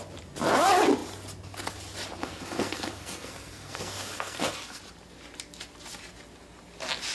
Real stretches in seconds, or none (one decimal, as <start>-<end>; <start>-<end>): 0.0-2.2; 4.8-7.1